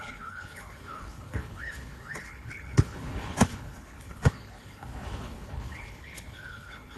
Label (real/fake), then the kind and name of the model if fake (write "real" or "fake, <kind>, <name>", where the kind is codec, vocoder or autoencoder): fake, codec, HILCodec